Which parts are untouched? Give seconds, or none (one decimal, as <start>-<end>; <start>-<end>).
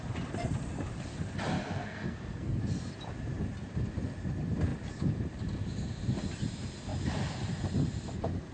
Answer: 0.0-1.6; 2.6-8.5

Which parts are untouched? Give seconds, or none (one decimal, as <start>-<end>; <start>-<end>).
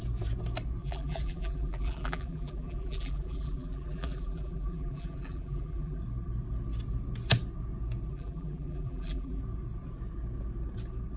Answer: 0.0-0.8; 6.0-8.1; 9.4-11.2